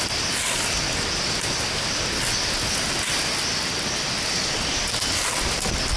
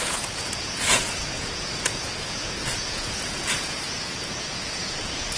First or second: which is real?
first